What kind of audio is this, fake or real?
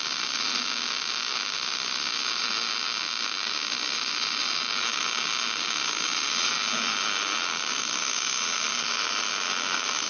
real